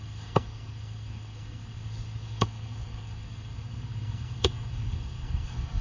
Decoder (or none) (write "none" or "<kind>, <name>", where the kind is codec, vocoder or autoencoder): codec, SNAC